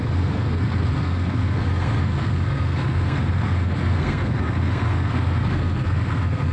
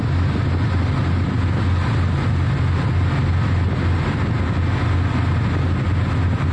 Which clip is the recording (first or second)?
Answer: second